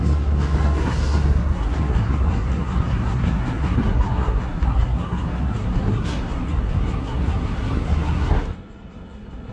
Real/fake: fake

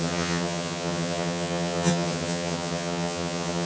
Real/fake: fake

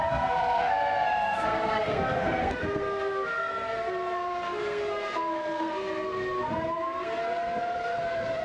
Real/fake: fake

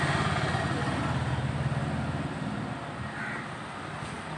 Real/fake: real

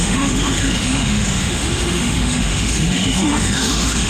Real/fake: fake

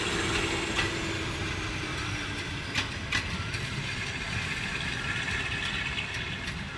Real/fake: real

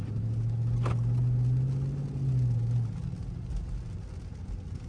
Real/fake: real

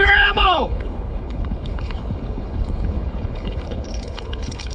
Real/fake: fake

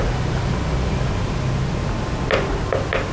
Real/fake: real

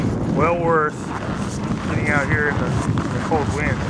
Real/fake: real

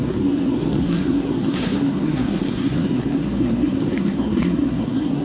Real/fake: fake